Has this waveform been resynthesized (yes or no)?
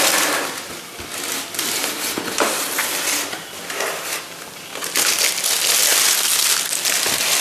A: no